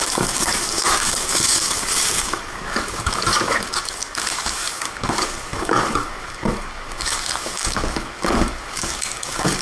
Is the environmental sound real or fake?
fake